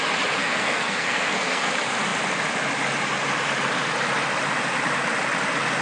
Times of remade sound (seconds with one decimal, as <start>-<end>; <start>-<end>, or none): 0.4-1.7